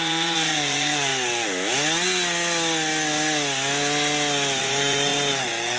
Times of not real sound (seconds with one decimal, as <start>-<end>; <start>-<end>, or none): 0.0-1.1; 4.6-5.8